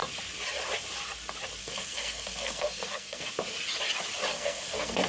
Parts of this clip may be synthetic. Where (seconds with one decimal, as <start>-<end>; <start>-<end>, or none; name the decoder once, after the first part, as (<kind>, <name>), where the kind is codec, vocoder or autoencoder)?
1.6-3.3 (codec, SNAC); 4.3-5.1